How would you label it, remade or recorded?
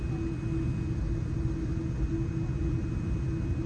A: recorded